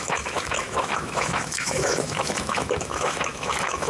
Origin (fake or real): fake